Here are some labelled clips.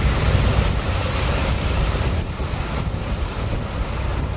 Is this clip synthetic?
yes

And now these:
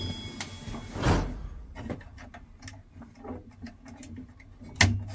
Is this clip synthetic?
no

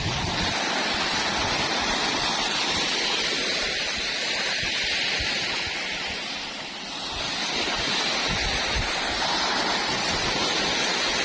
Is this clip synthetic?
no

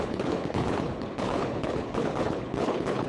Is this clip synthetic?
yes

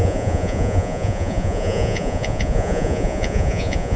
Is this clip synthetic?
yes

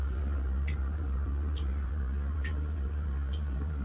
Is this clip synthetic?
yes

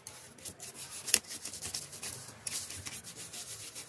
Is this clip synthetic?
no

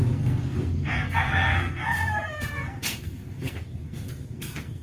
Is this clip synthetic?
yes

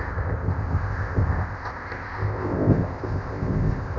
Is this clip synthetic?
yes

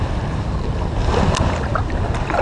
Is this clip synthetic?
no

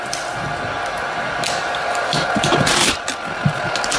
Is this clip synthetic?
no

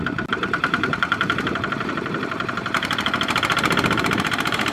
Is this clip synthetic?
yes